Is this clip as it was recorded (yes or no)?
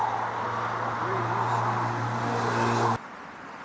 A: yes